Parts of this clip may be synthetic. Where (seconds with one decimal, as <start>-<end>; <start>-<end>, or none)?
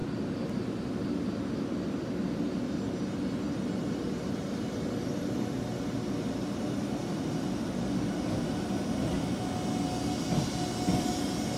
none